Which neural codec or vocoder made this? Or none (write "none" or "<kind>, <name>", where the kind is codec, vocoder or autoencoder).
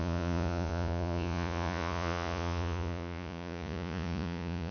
vocoder, Vocos